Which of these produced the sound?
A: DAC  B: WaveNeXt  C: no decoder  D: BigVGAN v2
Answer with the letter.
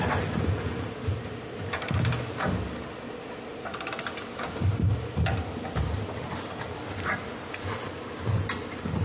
C